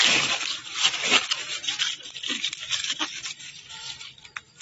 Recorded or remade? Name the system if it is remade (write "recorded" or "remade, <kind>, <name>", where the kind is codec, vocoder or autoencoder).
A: recorded